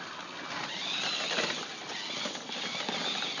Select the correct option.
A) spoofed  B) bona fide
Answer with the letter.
B